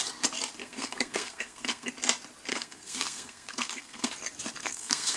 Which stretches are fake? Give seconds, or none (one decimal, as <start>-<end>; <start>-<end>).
0.6-1.9; 2.5-4.1; 4.6-5.2